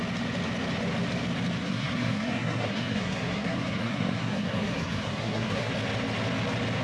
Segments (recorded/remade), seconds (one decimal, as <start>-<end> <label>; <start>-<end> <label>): 0.0-1.6 recorded; 1.6-5.7 remade; 5.7-6.8 recorded